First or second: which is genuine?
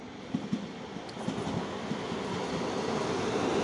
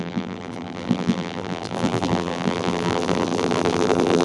first